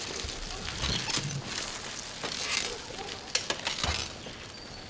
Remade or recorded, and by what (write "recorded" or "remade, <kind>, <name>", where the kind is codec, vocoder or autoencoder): recorded